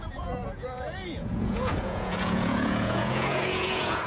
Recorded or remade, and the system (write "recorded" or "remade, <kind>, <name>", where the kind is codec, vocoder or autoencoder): remade, vocoder, Vocos